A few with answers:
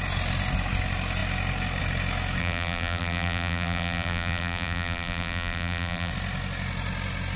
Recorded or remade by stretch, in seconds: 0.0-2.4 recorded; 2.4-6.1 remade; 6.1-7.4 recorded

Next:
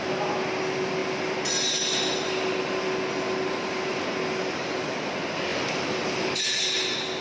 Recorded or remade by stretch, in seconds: 0.0-5.5 recorded; 5.5-6.4 remade; 6.4-7.2 recorded

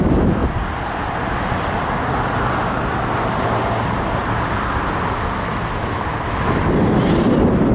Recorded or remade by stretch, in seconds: 0.0-4.2 recorded; 4.2-6.1 remade; 6.1-7.7 recorded

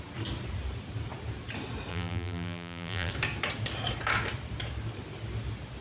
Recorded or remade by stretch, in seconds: 0.0-1.9 recorded; 1.9-3.1 remade; 3.1-5.8 recorded

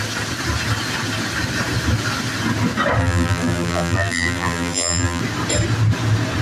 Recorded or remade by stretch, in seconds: 0.0-3.0 recorded; 3.0-5.2 remade; 5.2-6.4 recorded

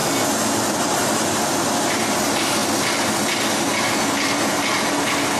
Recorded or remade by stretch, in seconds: 0.0-0.8 recorded; 0.8-2.6 remade; 2.6-5.4 recorded

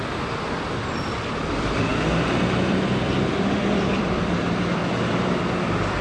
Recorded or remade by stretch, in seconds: 0.0-4.8 remade; 4.8-5.4 recorded; 5.4-6.0 remade